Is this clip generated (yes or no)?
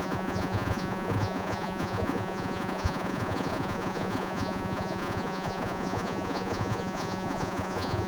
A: yes